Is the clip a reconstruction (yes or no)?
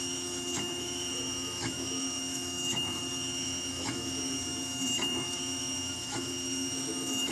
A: yes